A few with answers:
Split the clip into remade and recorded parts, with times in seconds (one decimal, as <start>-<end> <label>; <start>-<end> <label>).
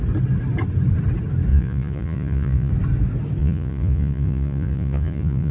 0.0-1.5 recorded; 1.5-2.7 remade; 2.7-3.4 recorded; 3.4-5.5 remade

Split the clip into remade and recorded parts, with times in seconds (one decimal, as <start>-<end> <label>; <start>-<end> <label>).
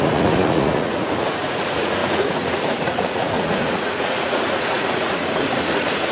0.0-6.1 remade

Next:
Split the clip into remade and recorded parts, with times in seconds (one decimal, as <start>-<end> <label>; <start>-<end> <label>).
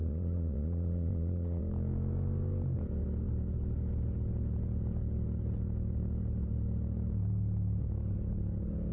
0.0-1.6 remade; 1.6-8.9 recorded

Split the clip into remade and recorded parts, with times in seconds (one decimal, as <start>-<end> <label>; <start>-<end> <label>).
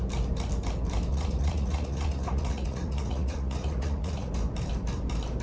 0.0-1.1 recorded; 1.1-4.3 remade; 4.3-5.4 recorded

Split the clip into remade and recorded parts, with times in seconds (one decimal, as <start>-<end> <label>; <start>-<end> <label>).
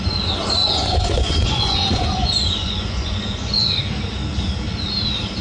0.0-0.6 recorded; 0.6-3.8 remade; 3.8-5.4 recorded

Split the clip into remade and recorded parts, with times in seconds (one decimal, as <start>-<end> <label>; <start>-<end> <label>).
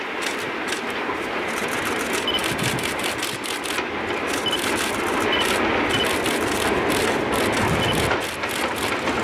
0.0-9.2 recorded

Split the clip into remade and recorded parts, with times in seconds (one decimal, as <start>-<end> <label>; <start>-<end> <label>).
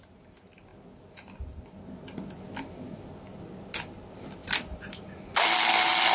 0.0-6.1 recorded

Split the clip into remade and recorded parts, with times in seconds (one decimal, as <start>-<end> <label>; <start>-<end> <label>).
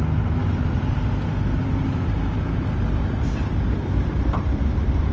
0.0-5.1 recorded